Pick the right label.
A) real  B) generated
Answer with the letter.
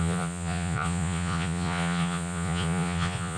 B